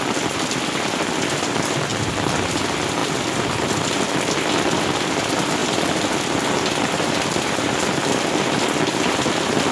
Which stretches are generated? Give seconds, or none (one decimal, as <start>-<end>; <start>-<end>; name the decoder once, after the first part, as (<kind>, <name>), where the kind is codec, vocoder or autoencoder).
5.6-9.7 (vocoder, BigVGAN v2)